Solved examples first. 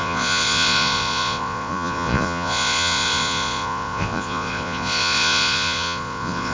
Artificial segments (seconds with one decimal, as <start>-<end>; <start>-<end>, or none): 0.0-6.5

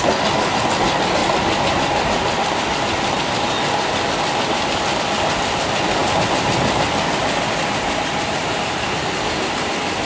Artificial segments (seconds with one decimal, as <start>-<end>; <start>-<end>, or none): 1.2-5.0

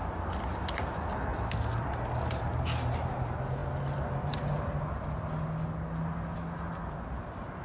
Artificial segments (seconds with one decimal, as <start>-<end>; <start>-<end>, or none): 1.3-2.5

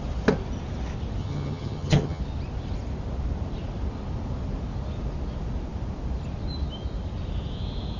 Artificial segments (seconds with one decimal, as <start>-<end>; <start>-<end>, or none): 1.2-2.2